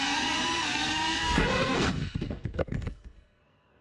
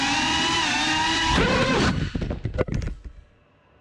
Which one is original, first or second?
second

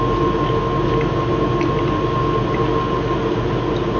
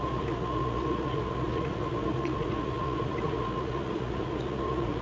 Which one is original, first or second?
first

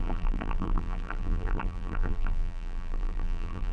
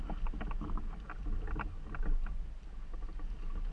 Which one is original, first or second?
second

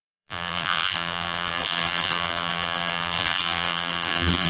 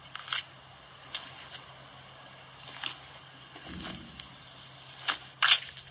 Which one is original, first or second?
second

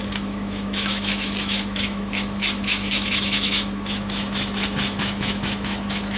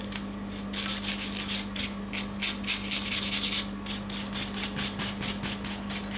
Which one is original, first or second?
second